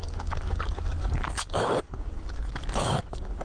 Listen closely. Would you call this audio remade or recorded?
remade